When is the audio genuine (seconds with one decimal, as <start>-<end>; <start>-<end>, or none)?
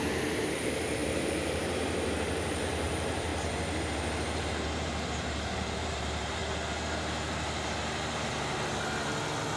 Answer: 3.3-4.4; 6.4-9.6